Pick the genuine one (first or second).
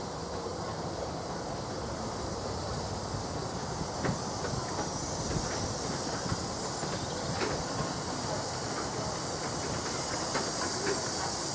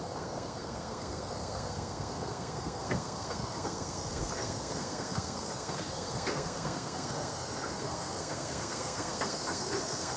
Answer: first